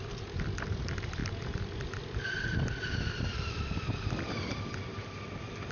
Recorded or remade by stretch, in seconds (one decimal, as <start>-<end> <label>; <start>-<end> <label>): 0.0-5.7 recorded